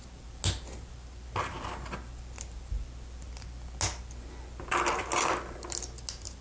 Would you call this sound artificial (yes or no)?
no